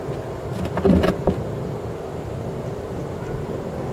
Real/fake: real